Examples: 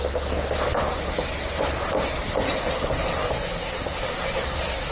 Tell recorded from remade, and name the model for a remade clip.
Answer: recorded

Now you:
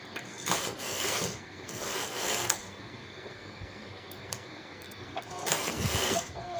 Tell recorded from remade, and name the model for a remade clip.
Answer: remade, codec, SNAC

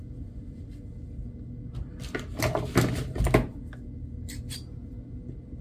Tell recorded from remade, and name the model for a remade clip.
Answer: recorded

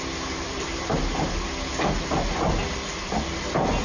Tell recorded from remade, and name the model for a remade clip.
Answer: recorded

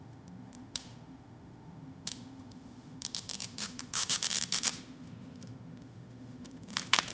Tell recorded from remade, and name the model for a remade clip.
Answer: remade, autoencoder, DAC-VAE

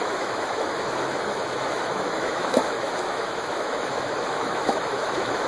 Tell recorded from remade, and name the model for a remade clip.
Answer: remade, autoencoder, DAC-VAE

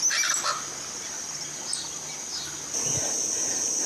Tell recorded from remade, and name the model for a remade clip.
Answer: recorded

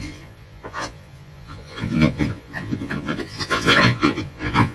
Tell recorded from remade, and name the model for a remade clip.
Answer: remade, vocoder, Vocos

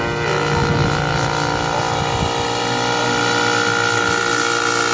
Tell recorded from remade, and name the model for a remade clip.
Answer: recorded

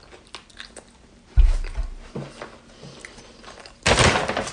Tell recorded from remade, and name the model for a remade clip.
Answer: recorded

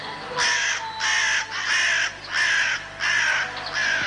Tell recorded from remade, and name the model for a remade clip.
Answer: recorded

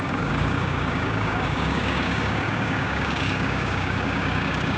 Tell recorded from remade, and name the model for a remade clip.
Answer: remade, codec, DAC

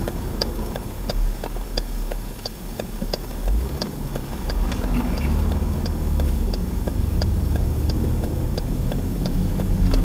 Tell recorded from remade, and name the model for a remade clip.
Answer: remade, codec, DAC